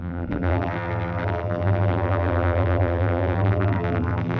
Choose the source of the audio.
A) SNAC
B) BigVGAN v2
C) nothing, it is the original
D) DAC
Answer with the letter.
B